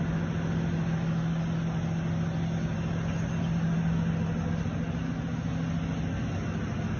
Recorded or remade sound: recorded